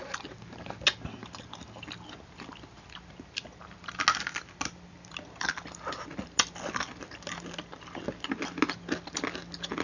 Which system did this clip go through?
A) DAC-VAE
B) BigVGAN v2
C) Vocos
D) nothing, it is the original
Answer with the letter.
D